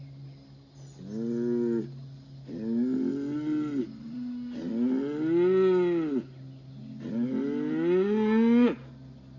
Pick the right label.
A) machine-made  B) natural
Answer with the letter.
B